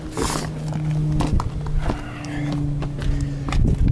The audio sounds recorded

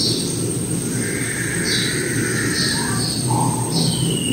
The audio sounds recorded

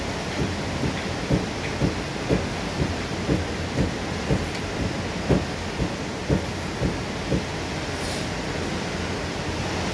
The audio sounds recorded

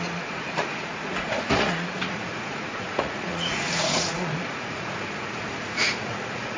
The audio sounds remade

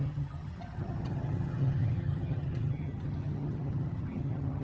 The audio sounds remade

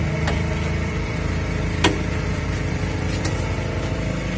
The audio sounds remade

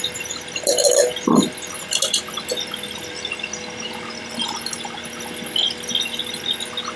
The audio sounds recorded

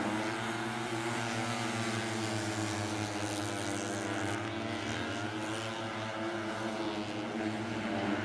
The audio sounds recorded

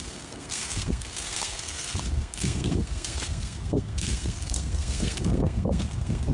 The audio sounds remade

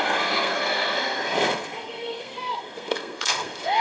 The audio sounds remade